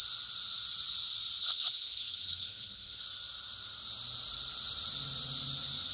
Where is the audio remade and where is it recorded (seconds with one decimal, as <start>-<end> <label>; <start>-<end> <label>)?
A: 0.0-1.4 recorded; 1.4-3.0 remade; 3.0-5.9 recorded